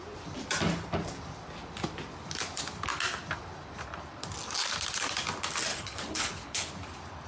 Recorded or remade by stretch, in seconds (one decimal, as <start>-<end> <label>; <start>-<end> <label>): 0.0-5.7 recorded; 5.7-6.7 remade; 6.7-7.3 recorded